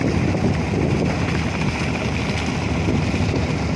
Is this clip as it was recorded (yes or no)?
yes